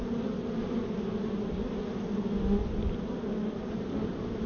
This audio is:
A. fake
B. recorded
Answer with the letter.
B